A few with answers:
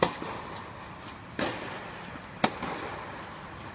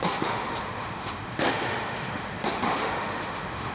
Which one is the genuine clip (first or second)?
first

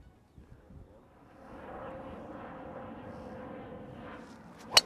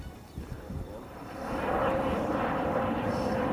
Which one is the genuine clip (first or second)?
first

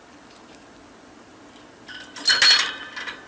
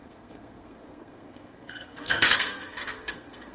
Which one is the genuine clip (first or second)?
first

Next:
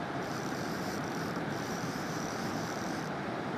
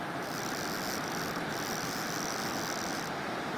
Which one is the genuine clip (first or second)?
second